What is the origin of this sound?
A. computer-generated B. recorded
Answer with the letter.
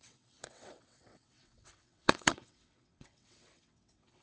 A